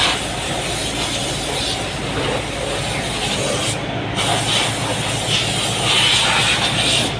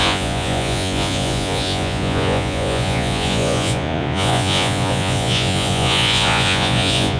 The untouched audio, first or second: first